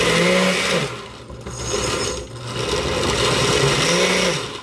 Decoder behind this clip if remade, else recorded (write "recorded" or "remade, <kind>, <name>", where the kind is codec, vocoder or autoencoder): recorded